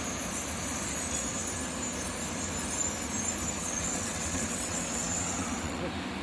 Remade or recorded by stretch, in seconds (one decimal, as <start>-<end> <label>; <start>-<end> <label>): 0.0-3.6 recorded; 3.6-5.8 remade; 5.8-6.2 recorded